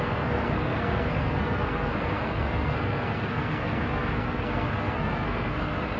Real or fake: fake